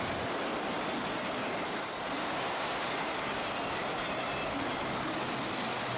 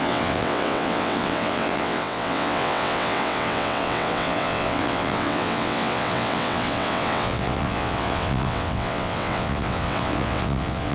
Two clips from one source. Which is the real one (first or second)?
first